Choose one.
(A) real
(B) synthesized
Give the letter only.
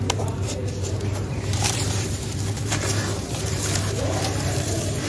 B